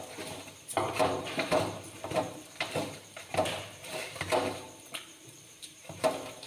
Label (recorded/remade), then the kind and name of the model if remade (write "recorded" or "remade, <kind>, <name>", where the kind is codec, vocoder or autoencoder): remade, vocoder, BigVGAN v2